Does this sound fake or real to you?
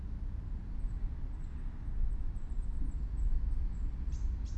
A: real